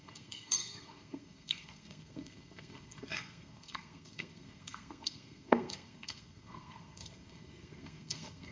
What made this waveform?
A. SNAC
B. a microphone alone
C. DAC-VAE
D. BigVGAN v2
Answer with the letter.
A